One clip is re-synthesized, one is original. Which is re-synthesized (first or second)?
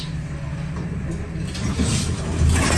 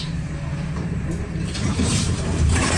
second